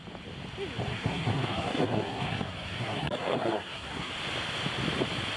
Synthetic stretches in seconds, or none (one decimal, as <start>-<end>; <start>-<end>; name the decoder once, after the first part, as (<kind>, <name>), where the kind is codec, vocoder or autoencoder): 0.9-4.1 (codec, SNAC)